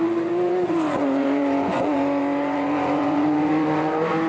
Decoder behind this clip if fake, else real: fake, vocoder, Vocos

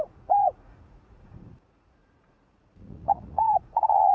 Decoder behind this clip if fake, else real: fake, vocoder, Vocos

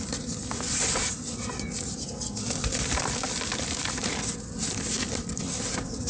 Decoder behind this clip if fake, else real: real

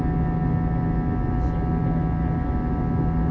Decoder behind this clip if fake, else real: real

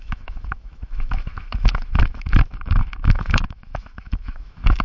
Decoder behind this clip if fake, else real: fake, autoencoder, DAC-VAE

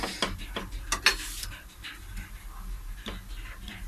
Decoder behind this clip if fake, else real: real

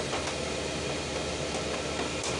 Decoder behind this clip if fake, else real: real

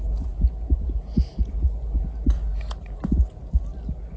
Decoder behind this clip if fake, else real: real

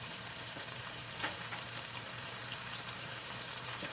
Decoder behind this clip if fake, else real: fake, vocoder, BigVGAN v2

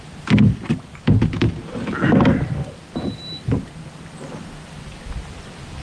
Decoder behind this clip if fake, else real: real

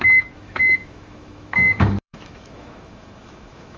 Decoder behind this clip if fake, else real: fake, autoencoder, DAC-VAE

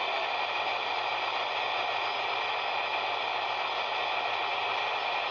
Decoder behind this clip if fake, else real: real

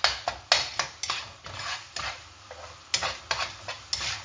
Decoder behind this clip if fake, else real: real